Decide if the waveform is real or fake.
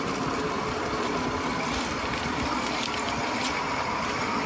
real